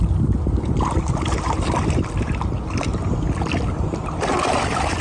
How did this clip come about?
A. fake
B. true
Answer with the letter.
B